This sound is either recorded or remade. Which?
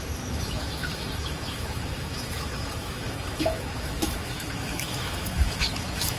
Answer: remade